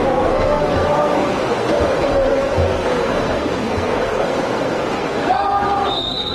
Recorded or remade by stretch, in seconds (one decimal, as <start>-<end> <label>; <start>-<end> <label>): 0.0-6.3 remade